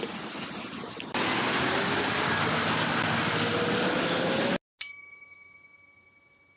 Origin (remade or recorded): recorded